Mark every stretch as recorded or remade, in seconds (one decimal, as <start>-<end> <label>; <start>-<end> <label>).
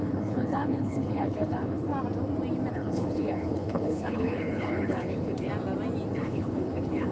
0.0-1.9 remade; 1.9-2.7 recorded; 2.7-5.5 remade; 5.5-6.1 recorded; 6.1-7.1 remade